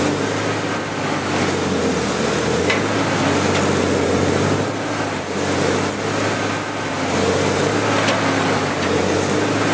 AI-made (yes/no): no